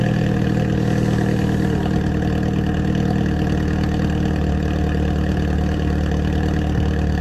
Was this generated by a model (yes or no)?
no